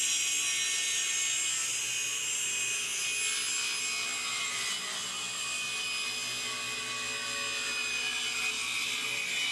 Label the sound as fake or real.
real